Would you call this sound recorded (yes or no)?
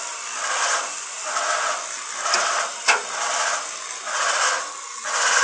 yes